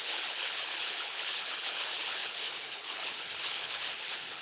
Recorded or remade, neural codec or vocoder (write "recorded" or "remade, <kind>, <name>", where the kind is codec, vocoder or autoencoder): remade, codec, HILCodec